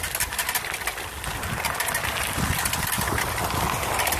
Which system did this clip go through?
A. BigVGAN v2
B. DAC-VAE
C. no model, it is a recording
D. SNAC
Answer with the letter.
C